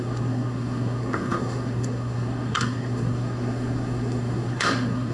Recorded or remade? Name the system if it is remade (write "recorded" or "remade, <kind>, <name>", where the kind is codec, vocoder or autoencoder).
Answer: remade, codec, SNAC